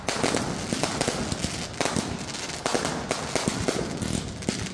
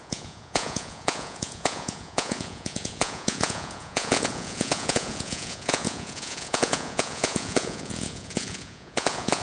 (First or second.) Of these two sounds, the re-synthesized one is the second